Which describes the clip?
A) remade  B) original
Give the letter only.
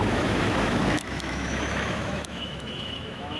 A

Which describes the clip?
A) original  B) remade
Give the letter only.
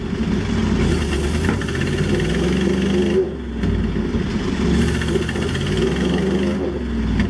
A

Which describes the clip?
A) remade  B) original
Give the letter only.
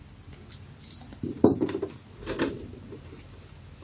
B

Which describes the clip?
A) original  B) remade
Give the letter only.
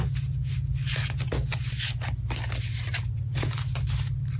A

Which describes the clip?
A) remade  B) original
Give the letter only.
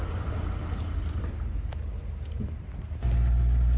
B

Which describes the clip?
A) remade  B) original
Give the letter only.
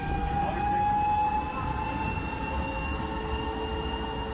B